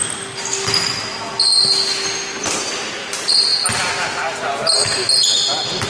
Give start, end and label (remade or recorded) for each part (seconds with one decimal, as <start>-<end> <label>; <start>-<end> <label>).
0.0-5.9 recorded

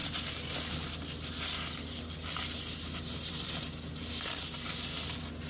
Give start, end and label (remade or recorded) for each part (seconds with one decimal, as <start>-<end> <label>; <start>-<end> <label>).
0.0-5.5 recorded

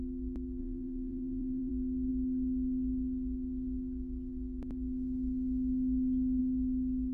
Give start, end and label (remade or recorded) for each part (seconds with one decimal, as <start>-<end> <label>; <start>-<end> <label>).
0.0-0.6 recorded; 0.6-1.7 remade; 1.7-7.1 recorded

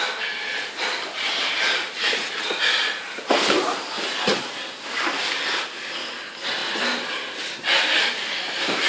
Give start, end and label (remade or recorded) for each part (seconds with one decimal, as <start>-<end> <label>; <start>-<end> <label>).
0.0-6.6 recorded; 6.6-8.9 remade

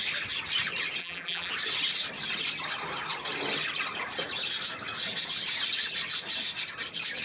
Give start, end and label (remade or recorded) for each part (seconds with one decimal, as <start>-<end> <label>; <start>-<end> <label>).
0.0-1.0 recorded; 1.0-1.5 remade; 1.5-7.2 recorded

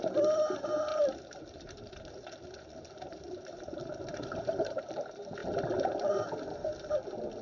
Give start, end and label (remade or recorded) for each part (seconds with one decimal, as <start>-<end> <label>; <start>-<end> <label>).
0.0-0.9 recorded; 0.9-4.8 remade; 4.8-7.4 recorded